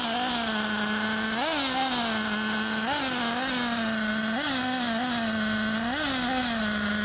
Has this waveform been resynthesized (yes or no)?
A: no